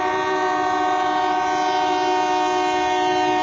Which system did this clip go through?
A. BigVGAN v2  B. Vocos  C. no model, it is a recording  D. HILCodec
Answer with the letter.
C